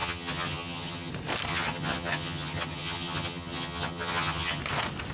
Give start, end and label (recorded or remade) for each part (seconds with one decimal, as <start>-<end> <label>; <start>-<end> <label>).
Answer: 0.0-1.1 remade; 1.1-1.5 recorded; 1.5-4.6 remade; 4.6-5.1 recorded